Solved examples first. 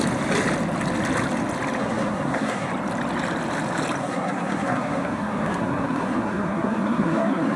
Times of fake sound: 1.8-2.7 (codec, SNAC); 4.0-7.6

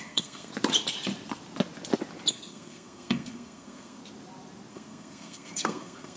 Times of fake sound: 0.0-0.5 (codec, SNAC); 2.3-4.0; 4.7-6.2

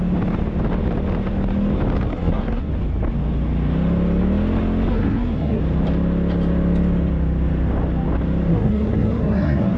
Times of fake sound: 2.1-2.7 (codec, SNAC); 4.9-5.6; 8.5-9.8

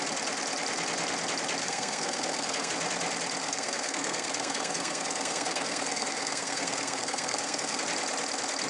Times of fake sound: 1.6-2.7 (codec, SNAC); 3.4-7.8

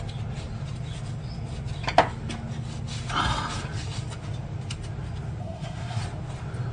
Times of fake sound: 5.4-6.0 (codec, SNAC)

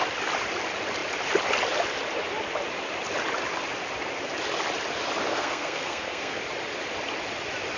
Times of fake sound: 5.3-6.4 (codec, SNAC)

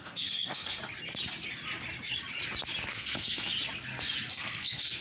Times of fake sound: 0.0-0.8 (codec, SNAC); 2.9-3.5; 4.3-5.0

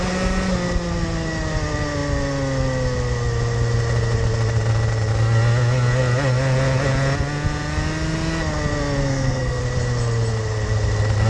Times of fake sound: 9.0-9.6 (codec, SNAC)